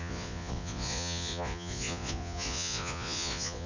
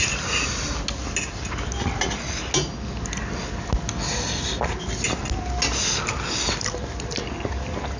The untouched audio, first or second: second